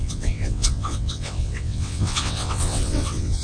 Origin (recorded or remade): remade